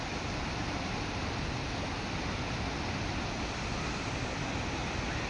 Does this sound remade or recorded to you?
recorded